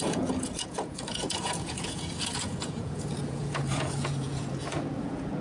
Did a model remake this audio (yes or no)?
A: yes